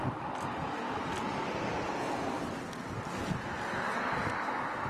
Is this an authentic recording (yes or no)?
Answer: yes